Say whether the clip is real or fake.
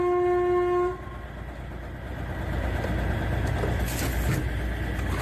real